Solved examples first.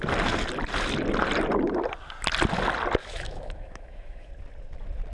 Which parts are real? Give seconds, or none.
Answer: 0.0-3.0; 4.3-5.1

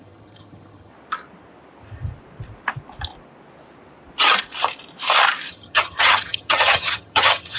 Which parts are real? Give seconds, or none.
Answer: 0.9-5.5